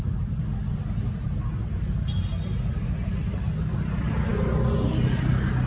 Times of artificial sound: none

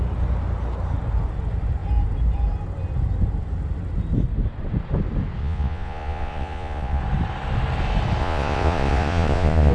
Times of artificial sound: 5.4-7.0 (vocoder, Vocos); 8.2-9.7

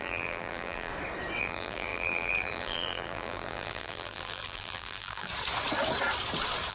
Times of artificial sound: 0.0-0.9 (vocoder, BigVGAN v2); 1.4-5.3

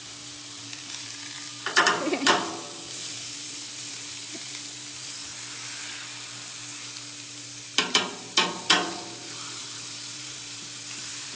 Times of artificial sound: 0.0-5.3 (vocoder, BigVGAN v2); 9.6-11.4